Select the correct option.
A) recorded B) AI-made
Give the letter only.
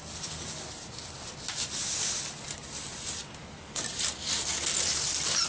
A